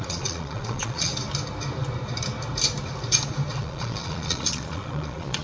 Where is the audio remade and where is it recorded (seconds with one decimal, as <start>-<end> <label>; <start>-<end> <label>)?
0.0-1.1 remade; 1.1-3.6 recorded; 3.6-5.4 remade

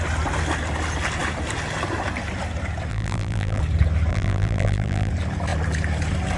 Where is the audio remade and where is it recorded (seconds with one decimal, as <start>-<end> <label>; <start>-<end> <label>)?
0.0-2.9 recorded; 2.9-3.6 remade; 3.6-4.1 recorded; 4.1-5.1 remade; 5.1-6.4 recorded

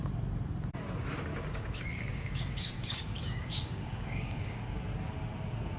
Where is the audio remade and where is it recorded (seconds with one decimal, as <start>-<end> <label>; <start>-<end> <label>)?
0.0-1.3 recorded; 1.3-4.8 remade; 4.8-5.8 recorded

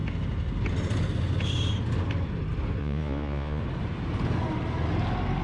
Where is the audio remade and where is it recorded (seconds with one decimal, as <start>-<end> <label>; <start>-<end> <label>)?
0.0-2.8 recorded; 2.8-3.6 remade; 3.6-5.4 recorded

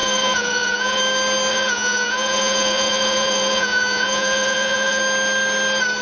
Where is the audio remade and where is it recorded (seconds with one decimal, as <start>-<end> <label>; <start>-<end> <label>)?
0.0-1.0 remade; 1.0-1.5 recorded; 1.5-5.0 remade; 5.0-6.0 recorded

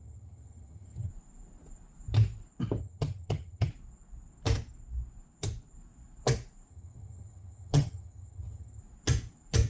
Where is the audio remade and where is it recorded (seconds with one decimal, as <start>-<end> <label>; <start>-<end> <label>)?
0.0-1.1 remade; 1.1-2.8 recorded; 2.8-3.7 remade; 3.7-6.7 recorded; 6.7-8.8 remade; 8.8-9.7 recorded

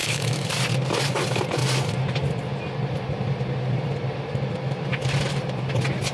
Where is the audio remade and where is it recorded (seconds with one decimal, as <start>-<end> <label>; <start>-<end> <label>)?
0.0-0.5 remade; 0.5-6.1 recorded